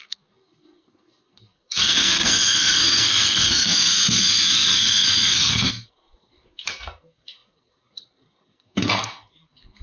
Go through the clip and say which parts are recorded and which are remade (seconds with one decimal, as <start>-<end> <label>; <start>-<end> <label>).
0.0-9.8 remade